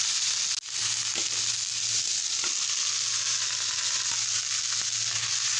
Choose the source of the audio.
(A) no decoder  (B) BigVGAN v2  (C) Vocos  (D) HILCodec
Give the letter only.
A